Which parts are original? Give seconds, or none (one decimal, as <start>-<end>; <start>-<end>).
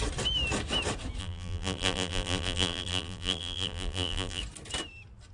0.0-1.2; 4.4-5.3